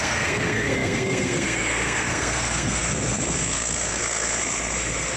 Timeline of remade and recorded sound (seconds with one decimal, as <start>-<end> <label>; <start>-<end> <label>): 0.0-5.2 remade